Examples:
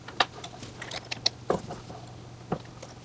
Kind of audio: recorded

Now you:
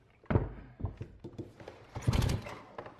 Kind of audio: recorded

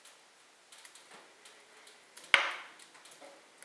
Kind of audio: recorded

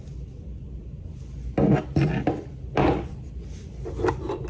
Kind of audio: recorded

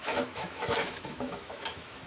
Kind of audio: remade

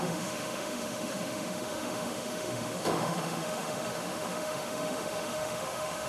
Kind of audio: remade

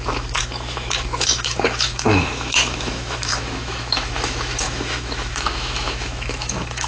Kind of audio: remade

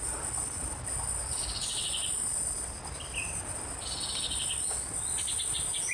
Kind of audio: recorded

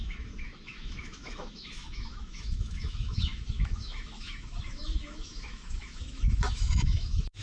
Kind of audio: remade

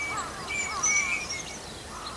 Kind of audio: recorded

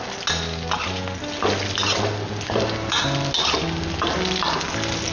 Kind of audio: recorded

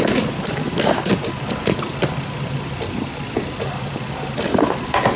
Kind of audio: recorded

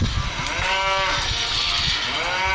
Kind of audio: recorded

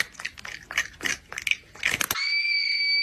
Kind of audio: recorded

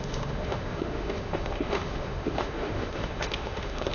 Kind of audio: remade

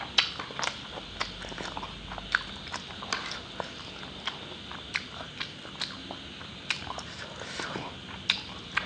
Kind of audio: recorded